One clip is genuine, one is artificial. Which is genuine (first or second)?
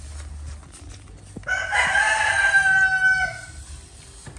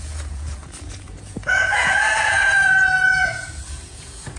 first